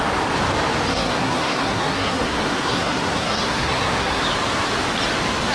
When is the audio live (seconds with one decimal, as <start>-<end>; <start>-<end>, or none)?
0.0-0.9; 4.2-5.5